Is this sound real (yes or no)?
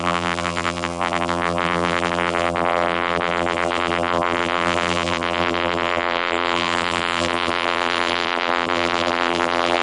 no